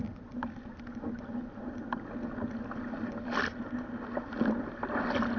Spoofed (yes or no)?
no